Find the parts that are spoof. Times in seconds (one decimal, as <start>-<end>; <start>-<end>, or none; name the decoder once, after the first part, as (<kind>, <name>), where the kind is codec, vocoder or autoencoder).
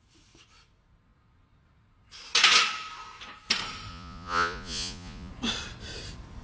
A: 3.9-5.3 (vocoder, Vocos)